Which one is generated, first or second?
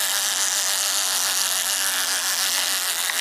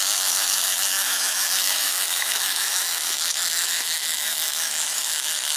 second